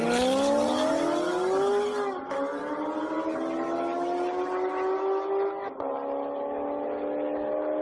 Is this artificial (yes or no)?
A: no